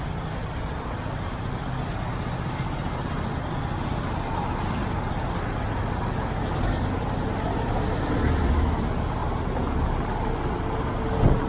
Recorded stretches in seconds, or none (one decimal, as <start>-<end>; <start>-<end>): 0.0-11.5